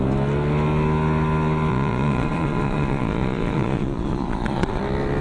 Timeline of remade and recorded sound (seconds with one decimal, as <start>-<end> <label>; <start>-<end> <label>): 0.0-1.7 recorded; 1.7-4.8 remade; 4.8-5.2 recorded